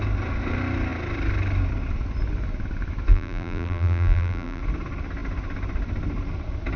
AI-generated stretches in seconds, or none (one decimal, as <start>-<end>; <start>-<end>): 3.1-4.6